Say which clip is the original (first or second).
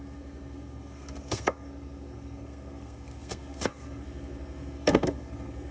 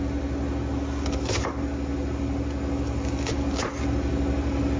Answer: second